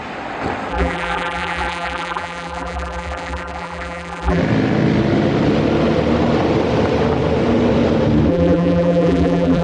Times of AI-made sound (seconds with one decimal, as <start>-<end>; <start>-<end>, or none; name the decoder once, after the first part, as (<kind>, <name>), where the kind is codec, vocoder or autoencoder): 0.7-4.4 (vocoder, BigVGAN v2); 8.3-9.6

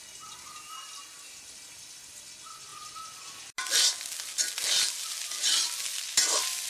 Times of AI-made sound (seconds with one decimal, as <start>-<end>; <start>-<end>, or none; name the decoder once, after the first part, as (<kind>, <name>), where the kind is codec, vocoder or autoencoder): none